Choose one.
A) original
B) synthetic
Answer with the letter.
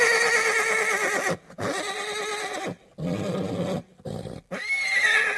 A